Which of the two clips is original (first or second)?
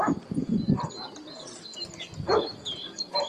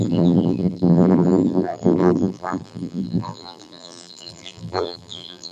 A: first